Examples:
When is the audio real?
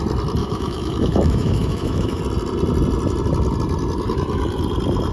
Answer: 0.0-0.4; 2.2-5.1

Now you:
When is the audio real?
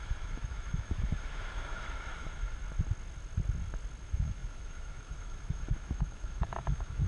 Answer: 2.6-4.0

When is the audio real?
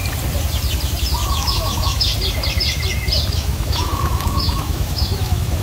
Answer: 0.0-1.3; 2.1-3.3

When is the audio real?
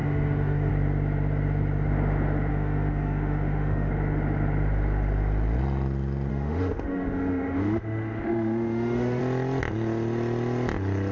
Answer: 0.7-2.5; 3.9-6.3; 9.2-11.1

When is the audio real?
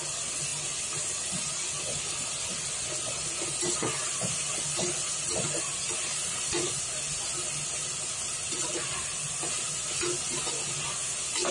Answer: 0.0-11.5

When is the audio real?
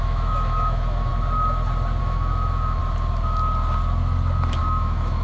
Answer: 1.1-2.0; 2.8-4.6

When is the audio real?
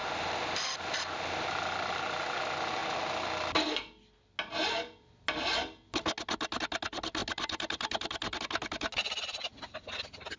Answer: 0.0-10.4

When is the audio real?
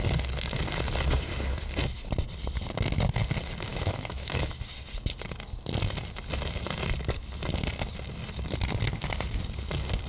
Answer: 0.0-3.7; 4.5-10.1